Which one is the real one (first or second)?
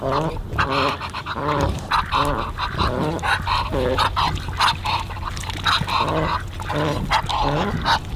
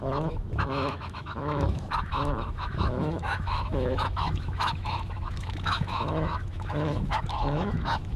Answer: first